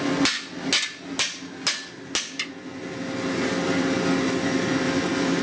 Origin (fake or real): real